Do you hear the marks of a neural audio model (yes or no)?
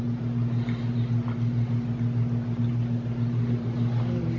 no